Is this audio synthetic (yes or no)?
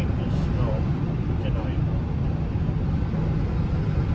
no